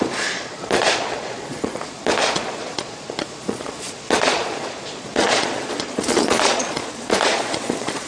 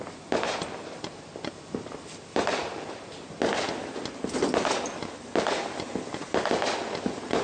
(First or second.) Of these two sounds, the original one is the second